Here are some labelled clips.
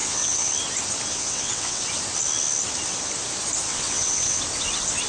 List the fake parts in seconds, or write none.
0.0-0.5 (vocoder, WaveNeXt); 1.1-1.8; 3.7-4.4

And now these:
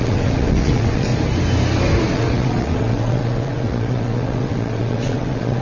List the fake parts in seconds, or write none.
0.0-1.1 (vocoder, WaveNeXt); 2.1-5.6

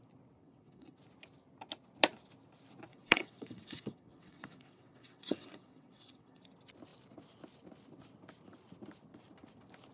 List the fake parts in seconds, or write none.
0.4-1.0 (vocoder, WaveNeXt); 2.9-6.4